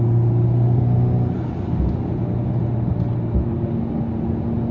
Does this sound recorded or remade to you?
recorded